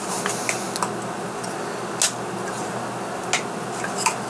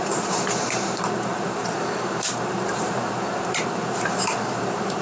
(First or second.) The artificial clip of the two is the second